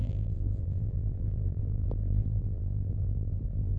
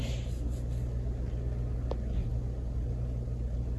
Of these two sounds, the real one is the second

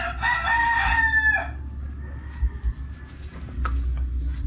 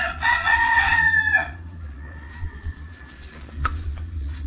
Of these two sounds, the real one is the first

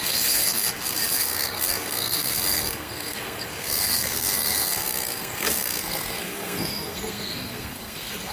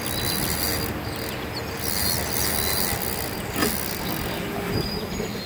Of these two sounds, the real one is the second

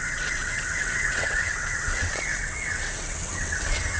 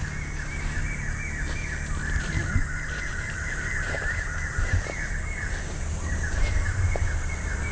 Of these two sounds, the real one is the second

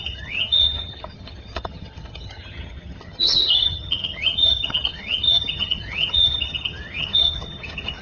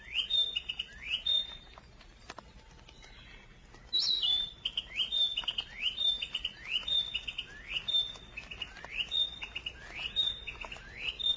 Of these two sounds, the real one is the second